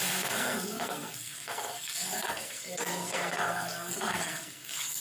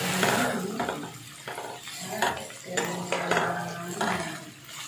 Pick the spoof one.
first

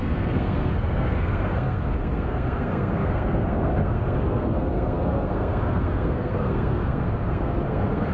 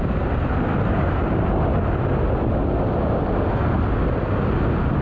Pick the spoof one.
first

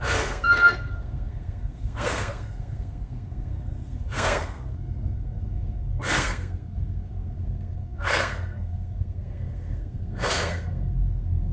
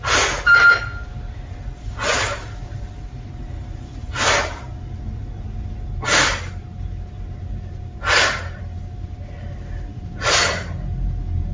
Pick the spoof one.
first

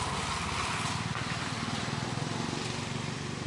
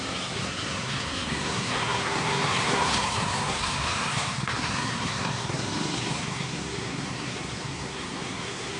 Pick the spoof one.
second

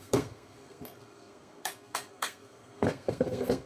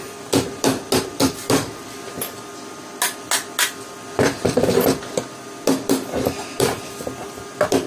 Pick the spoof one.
first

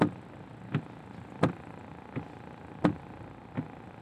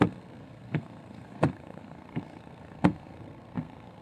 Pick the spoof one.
second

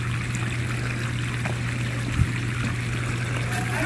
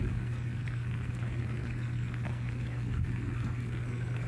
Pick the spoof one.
second